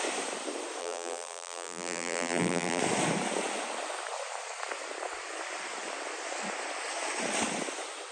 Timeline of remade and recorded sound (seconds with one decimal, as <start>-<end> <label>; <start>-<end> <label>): 0.0-0.8 recorded; 0.8-2.8 remade; 2.8-8.1 recorded